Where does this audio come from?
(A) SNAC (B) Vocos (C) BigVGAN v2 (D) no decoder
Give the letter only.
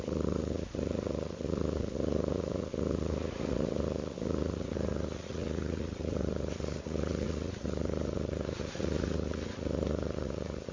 B